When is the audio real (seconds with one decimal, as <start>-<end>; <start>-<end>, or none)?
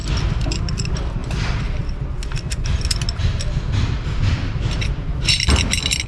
0.0-6.1